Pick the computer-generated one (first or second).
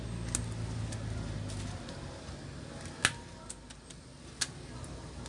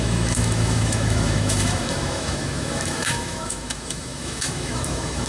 second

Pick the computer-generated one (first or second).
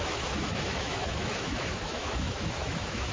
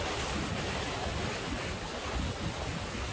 first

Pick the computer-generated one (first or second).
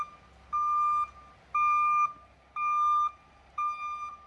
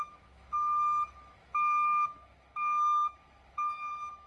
second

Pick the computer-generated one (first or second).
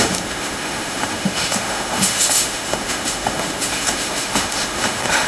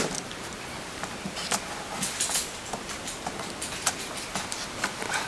first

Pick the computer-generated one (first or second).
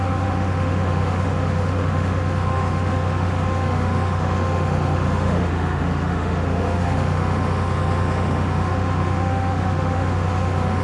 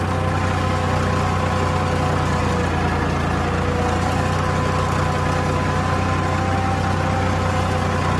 first